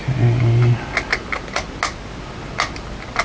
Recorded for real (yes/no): yes